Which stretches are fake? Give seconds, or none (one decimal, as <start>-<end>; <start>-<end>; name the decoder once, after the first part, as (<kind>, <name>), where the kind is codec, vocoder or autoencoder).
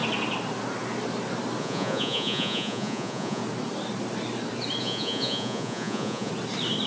1.6-3.4 (vocoder, Vocos); 4.8-6.3